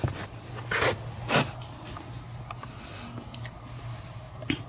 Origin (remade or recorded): recorded